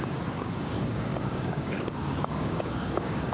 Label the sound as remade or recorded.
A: remade